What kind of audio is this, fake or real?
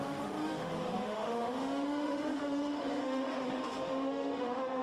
fake